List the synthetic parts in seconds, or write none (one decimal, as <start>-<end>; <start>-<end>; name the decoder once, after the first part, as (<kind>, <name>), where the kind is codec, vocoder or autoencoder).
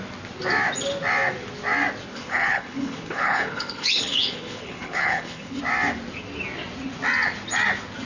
2.1-5.6 (codec, HILCodec)